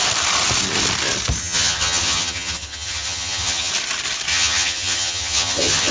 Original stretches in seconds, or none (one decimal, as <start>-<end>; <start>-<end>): 0.0-1.4; 3.7-4.3